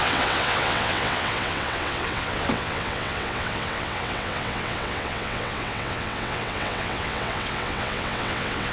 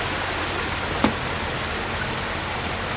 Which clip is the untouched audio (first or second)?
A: second